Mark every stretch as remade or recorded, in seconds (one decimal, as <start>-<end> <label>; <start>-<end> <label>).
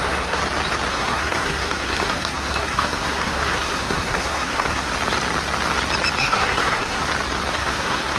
0.0-0.4 remade; 0.4-0.9 recorded; 0.9-4.9 remade; 4.9-6.2 recorded; 6.2-7.0 remade; 7.0-7.5 recorded; 7.5-8.2 remade